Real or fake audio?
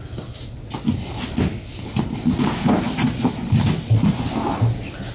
real